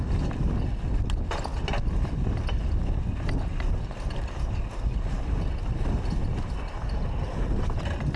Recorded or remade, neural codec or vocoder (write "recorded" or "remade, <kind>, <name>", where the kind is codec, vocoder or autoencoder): recorded